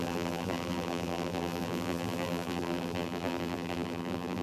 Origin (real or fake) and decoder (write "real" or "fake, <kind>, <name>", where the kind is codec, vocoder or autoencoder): fake, vocoder, BigVGAN v2